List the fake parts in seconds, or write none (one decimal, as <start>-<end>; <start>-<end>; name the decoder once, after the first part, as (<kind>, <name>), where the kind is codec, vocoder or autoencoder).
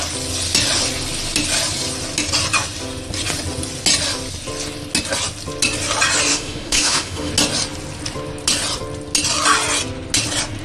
6.3-7.3 (autoencoder, DAC-VAE)